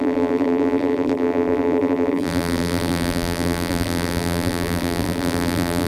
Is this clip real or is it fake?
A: fake